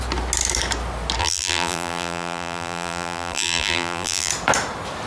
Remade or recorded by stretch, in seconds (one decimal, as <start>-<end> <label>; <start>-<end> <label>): 0.0-1.2 recorded; 1.2-4.3 remade; 4.3-5.1 recorded

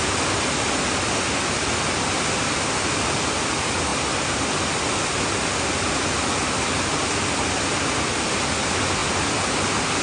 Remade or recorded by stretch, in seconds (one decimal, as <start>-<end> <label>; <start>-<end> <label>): 0.0-10.0 recorded

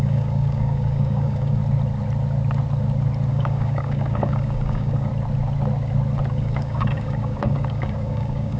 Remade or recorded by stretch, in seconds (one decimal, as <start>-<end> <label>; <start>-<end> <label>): 0.0-1.6 remade; 1.6-3.3 recorded; 3.3-5.1 remade; 5.1-6.3 recorded; 6.3-8.6 remade

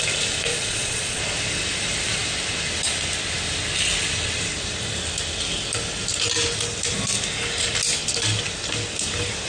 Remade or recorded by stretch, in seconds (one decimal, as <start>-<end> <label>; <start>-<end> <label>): 0.0-0.5 recorded; 0.5-1.2 remade; 1.2-9.5 recorded

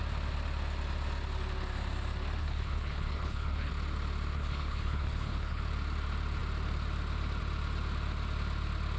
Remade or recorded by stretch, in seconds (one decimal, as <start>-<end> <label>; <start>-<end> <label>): 0.0-2.4 recorded; 2.4-3.7 remade; 3.7-4.3 recorded; 4.3-5.6 remade; 5.6-9.0 recorded

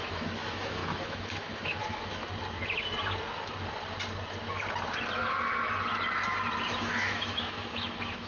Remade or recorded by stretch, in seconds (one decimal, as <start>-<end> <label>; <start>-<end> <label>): 0.0-2.2 remade; 2.2-6.8 recorded; 6.8-8.3 remade

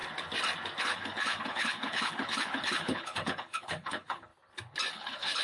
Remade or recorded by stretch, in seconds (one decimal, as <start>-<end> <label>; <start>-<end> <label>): 0.0-0.8 recorded; 0.8-4.3 remade; 4.3-4.9 recorded; 4.9-5.4 remade